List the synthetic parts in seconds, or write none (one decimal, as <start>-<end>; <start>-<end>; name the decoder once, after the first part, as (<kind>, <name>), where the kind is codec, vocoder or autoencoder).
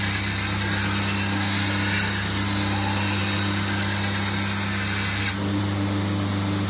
none